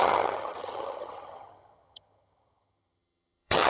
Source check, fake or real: fake